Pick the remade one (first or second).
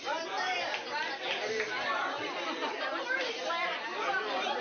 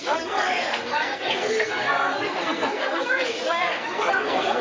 second